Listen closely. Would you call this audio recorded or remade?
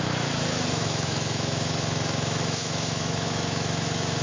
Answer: remade